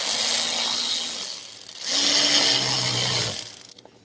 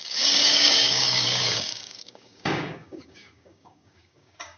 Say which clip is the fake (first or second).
second